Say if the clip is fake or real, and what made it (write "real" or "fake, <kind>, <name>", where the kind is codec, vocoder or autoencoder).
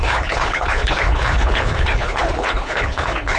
fake, codec, HILCodec